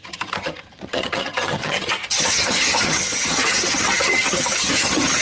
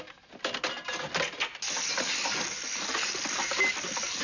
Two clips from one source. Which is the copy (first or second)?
first